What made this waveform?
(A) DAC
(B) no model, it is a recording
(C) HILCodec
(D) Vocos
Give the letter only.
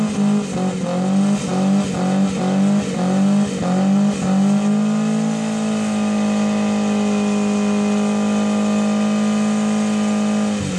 B